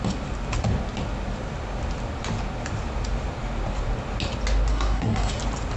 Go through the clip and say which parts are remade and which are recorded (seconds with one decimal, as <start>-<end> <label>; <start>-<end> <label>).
0.0-4.7 recorded; 4.7-5.3 remade; 5.3-5.8 recorded